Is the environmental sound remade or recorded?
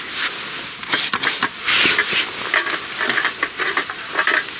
recorded